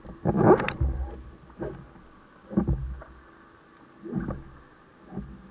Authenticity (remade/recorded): recorded